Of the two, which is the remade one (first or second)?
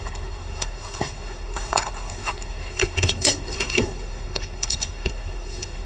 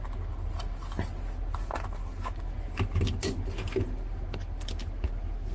first